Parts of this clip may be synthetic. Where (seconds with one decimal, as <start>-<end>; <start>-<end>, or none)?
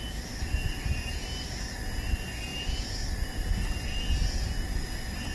none